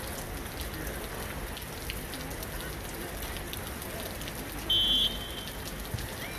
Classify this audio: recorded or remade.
recorded